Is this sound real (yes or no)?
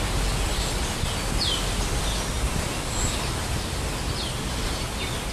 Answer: yes